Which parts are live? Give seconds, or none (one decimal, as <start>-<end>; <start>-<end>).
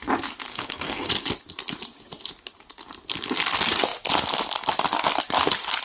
0.0-0.5; 1.1-5.8